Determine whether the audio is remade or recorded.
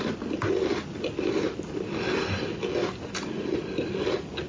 recorded